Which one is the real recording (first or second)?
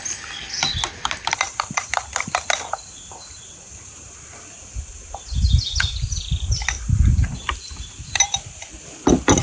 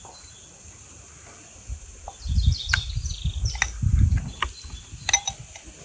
second